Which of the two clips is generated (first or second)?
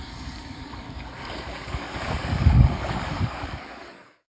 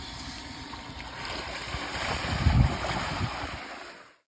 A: first